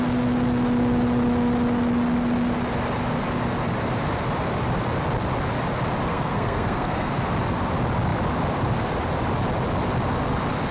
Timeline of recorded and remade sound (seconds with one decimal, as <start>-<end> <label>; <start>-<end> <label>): 0.0-6.1 recorded; 6.1-7.1 remade; 7.1-10.7 recorded